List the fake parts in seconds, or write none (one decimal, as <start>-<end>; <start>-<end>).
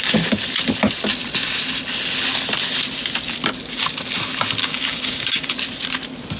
4.6-5.5